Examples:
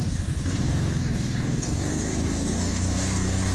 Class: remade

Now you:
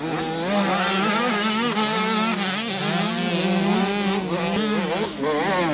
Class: recorded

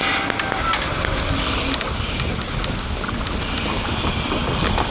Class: recorded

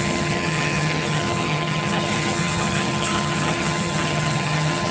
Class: remade